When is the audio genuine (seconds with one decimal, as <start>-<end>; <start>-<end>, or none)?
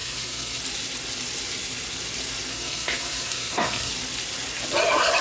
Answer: 0.6-2.5; 3.9-5.2